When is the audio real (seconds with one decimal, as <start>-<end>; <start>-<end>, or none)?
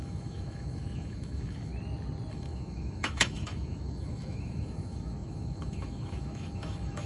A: 1.7-2.3